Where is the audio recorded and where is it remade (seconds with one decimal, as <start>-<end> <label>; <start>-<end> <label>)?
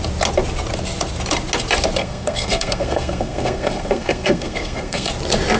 0.0-2.0 recorded; 2.0-5.1 remade; 5.1-5.6 recorded